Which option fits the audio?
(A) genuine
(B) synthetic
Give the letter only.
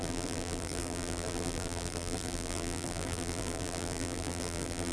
B